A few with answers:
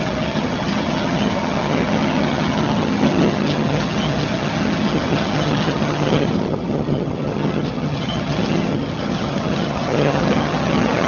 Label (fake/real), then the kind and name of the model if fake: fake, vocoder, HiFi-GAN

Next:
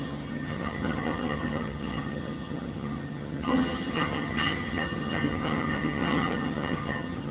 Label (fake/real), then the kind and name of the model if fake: fake, vocoder, HiFi-GAN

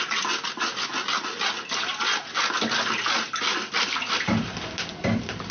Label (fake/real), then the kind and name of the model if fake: real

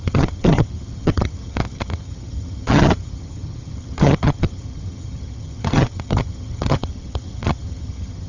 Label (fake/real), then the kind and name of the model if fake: fake, vocoder, HiFi-GAN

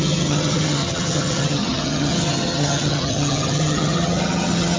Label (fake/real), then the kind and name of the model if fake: fake, vocoder, HiFi-GAN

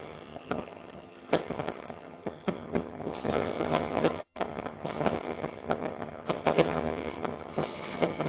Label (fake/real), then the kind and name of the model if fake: fake, vocoder, HiFi-GAN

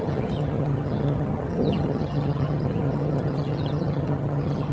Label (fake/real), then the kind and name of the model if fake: fake, vocoder, HiFi-GAN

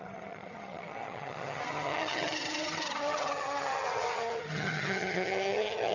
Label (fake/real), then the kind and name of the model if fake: fake, vocoder, HiFi-GAN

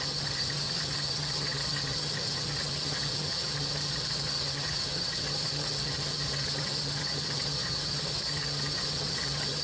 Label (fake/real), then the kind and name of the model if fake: fake, vocoder, HiFi-GAN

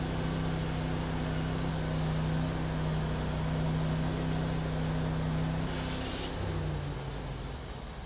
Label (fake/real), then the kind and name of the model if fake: real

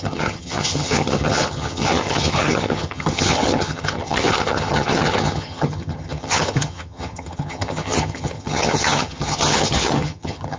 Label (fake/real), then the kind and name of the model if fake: fake, vocoder, HiFi-GAN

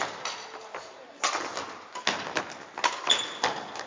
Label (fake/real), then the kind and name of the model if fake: real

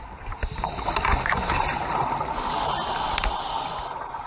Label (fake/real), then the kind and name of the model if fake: real